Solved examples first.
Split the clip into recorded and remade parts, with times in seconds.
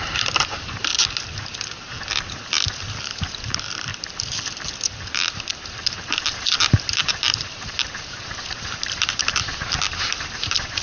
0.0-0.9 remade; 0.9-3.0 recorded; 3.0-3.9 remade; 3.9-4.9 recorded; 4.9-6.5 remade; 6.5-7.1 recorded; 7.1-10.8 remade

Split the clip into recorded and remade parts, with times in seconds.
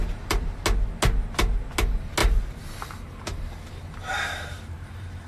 0.0-0.6 remade; 0.6-2.2 recorded; 2.2-5.3 remade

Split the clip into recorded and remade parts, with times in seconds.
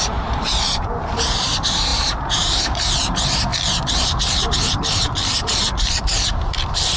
0.0-7.0 remade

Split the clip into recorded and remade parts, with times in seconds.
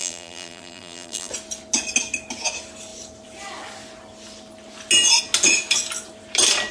0.0-1.3 remade; 1.3-6.7 recorded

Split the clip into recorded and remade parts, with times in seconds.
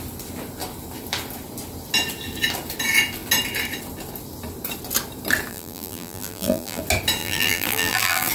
0.0-5.5 recorded; 5.5-6.8 remade; 6.8-7.2 recorded; 7.2-8.3 remade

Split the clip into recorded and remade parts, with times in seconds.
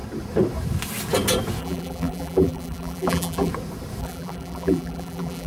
0.0-1.6 recorded; 1.6-3.5 remade; 3.5-4.0 recorded; 4.0-5.5 remade